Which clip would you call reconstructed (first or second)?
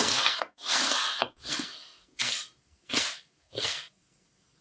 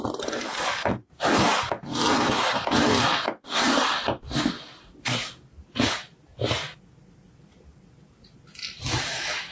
first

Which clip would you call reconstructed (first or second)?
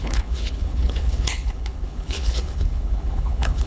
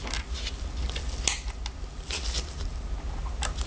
first